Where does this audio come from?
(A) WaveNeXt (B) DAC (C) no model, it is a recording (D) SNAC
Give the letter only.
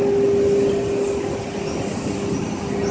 C